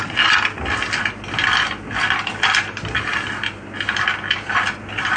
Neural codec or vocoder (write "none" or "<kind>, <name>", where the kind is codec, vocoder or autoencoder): none